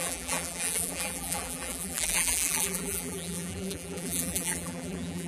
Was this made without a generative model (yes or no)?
no